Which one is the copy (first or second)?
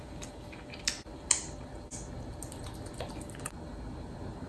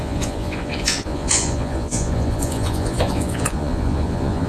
second